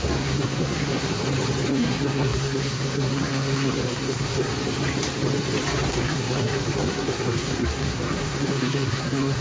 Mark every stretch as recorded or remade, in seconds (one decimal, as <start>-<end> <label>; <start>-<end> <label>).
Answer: 0.0-1.2 remade; 1.2-1.7 recorded; 1.7-4.5 remade; 4.5-5.9 recorded; 5.9-9.4 remade